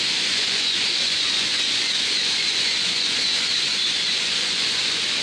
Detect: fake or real fake